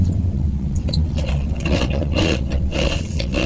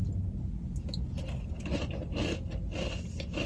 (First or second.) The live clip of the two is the second